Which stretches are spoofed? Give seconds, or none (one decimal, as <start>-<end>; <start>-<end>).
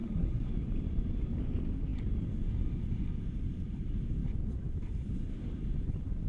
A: 0.0-0.5